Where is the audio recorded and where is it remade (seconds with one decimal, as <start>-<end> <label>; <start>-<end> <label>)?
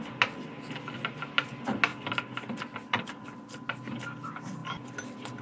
0.0-5.4 recorded